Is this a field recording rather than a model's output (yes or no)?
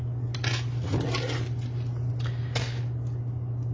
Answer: yes